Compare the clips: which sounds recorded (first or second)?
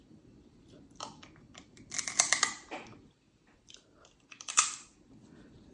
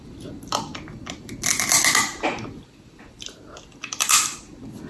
second